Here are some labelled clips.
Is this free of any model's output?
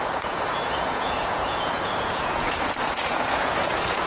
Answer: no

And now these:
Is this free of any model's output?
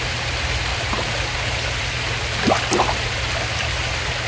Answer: yes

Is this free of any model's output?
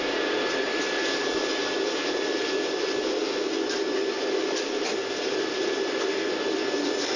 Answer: yes